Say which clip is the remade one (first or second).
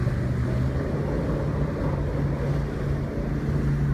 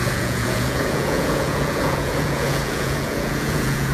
second